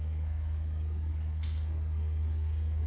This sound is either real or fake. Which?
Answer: fake